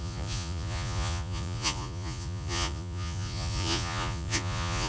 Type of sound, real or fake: fake